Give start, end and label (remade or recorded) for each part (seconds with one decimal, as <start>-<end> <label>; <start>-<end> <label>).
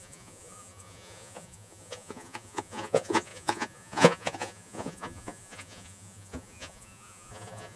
0.0-7.8 remade